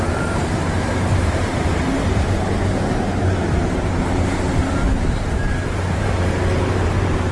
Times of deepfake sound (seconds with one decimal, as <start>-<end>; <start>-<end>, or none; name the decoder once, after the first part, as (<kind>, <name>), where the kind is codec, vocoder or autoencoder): 0.0-1.8 (vocoder, BigVGAN v2); 2.7-7.3